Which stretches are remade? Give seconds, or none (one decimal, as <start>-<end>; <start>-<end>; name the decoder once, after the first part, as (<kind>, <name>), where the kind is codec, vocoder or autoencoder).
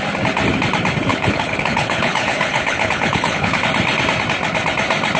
1.1-3.6 (codec, HILCodec)